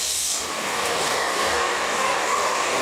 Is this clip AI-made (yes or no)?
yes